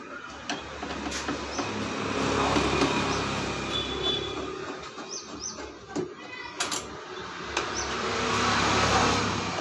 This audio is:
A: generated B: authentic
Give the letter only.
B